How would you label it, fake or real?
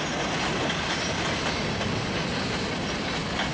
real